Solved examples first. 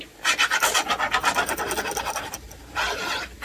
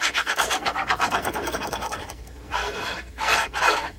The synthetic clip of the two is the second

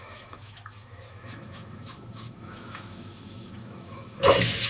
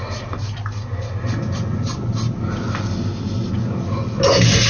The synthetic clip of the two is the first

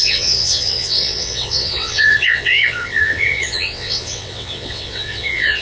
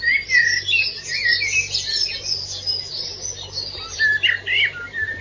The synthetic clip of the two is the first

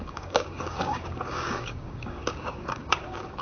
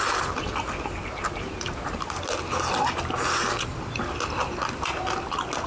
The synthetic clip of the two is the first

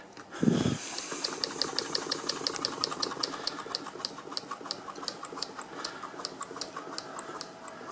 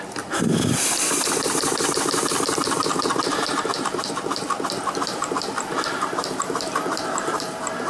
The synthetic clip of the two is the second